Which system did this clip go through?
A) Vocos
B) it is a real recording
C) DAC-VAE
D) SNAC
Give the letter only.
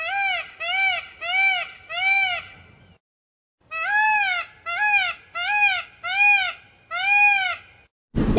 B